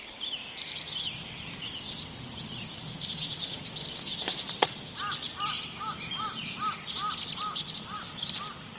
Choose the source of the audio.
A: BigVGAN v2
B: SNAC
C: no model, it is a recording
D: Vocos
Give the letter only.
A